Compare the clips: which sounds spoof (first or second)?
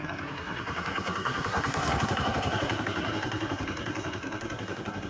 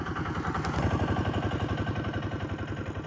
first